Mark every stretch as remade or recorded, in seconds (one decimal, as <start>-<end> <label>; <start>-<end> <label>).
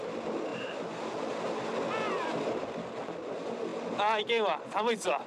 0.0-5.3 recorded